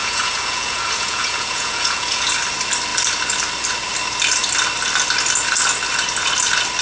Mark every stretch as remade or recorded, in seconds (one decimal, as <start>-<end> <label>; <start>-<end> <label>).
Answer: 0.0-2.3 remade; 2.3-6.8 recorded